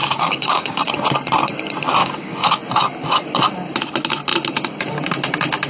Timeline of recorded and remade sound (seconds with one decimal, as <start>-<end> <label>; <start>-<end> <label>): 0.0-0.9 remade; 0.9-2.0 recorded; 2.0-2.6 remade; 2.6-5.7 recorded

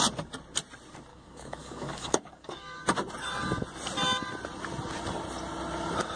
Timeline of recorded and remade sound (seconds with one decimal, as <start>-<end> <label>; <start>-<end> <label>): 0.0-1.1 recorded; 1.1-2.8 remade; 2.8-6.2 recorded

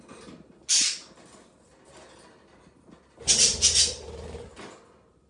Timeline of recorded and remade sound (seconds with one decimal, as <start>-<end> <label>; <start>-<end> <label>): 0.0-5.3 recorded

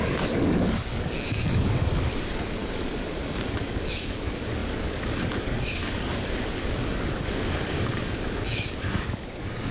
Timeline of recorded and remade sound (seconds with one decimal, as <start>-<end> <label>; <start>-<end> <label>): 0.0-9.7 remade

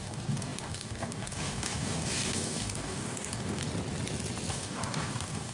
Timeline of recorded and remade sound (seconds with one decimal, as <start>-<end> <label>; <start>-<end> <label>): 0.0-3.6 remade; 3.6-4.5 recorded; 4.5-5.5 remade

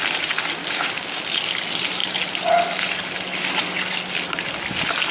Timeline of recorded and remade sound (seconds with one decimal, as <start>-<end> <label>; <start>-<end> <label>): 0.0-0.6 recorded; 0.6-1.2 remade; 1.2-5.1 recorded